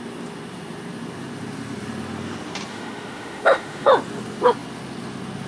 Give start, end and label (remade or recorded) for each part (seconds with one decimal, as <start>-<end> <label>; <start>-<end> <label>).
0.0-2.7 recorded; 2.7-3.9 remade; 3.9-5.5 recorded